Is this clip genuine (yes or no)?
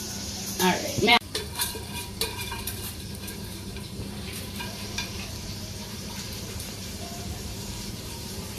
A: no